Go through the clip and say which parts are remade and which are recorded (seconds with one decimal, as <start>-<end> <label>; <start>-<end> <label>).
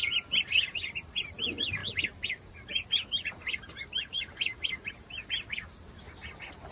0.0-6.7 recorded